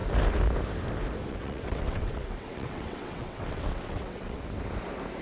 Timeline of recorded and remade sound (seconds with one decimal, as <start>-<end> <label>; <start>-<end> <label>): 0.0-1.3 recorded; 1.3-4.4 remade; 4.4-5.2 recorded